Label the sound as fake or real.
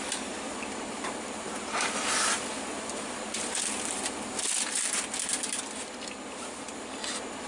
fake